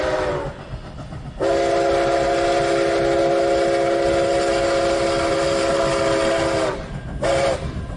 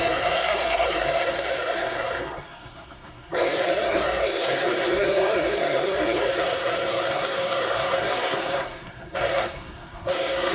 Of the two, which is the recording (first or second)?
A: first